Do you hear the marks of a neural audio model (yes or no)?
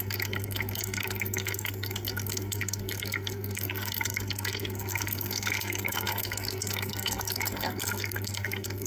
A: yes